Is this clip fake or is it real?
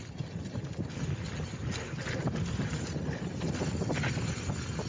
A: real